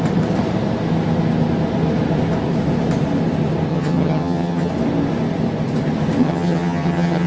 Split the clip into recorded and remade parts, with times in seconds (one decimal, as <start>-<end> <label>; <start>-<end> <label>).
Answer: 0.0-3.7 recorded; 3.7-4.7 remade; 4.7-6.2 recorded; 6.2-7.3 remade